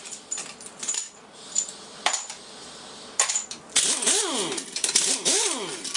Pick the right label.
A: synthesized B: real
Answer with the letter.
B